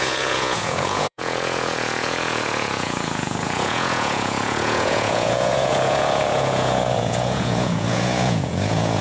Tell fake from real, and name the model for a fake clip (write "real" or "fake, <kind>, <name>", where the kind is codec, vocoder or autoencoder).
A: fake, vocoder, Vocos